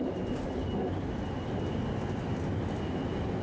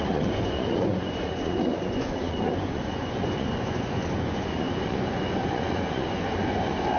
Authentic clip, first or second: first